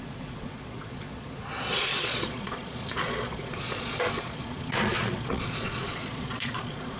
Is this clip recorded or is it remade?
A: remade